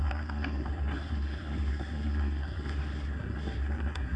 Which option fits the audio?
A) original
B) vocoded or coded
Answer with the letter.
B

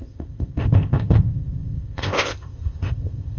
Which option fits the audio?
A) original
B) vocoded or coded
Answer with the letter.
B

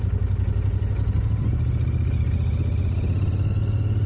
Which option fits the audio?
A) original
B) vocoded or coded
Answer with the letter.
A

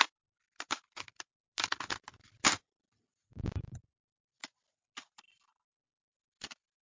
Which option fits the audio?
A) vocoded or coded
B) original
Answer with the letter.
B